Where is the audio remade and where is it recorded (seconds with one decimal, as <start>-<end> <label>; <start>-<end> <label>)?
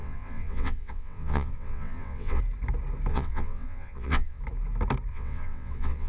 0.0-2.4 remade; 2.4-3.1 recorded; 3.1-4.4 remade; 4.4-5.1 recorded; 5.1-6.1 remade